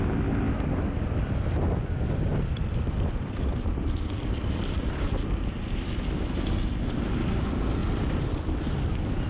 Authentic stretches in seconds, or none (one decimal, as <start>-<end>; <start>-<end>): 0.0-2.3; 4.9-7.8